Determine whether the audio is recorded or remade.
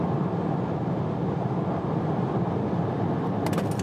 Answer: recorded